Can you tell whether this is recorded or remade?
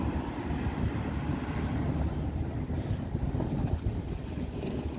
recorded